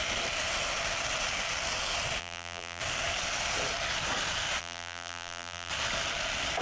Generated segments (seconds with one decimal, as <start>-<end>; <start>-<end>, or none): 2.2-2.8; 4.6-5.7